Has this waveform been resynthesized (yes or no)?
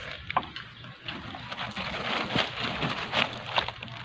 no